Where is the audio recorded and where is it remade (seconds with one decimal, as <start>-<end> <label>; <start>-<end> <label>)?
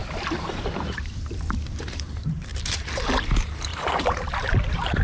0.0-5.0 remade